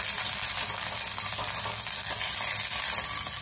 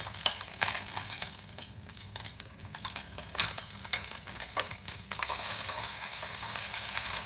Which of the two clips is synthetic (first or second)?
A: second